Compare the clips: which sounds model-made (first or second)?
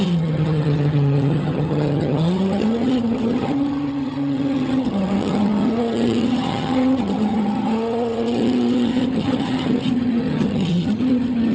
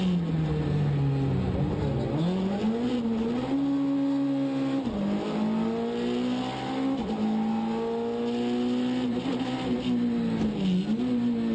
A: first